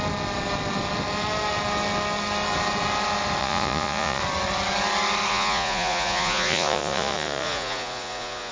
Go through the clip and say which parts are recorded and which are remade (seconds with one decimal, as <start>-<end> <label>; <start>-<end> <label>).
0.0-3.4 recorded; 3.4-4.2 remade; 4.2-5.3 recorded; 5.3-8.5 remade